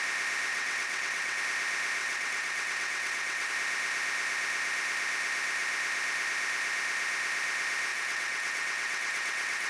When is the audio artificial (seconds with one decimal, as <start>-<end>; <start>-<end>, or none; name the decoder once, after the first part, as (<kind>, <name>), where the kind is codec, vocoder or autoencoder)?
0.5-1.4 (vocoder, WaveNeXt); 2.0-3.5; 7.9-9.7